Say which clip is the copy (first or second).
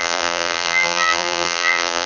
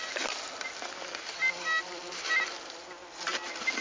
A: first